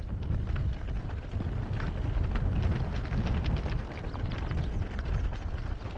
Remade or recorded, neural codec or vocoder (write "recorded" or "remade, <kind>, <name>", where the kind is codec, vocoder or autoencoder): recorded